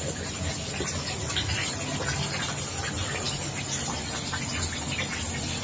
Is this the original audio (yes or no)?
yes